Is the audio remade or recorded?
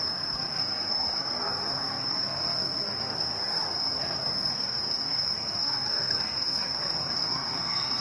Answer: remade